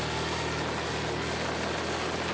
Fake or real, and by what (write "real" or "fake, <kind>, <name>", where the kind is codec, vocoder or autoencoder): real